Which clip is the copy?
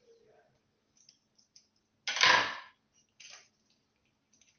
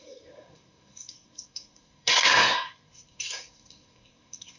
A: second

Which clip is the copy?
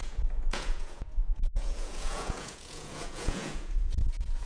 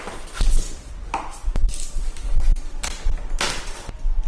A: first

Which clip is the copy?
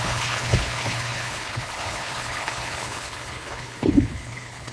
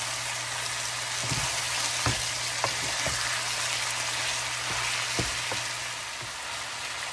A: first